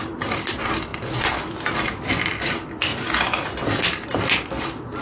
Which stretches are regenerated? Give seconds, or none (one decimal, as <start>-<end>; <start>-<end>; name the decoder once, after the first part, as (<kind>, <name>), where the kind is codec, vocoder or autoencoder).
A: 0.0-0.9 (vocoder, BigVGAN v2); 2.1-5.0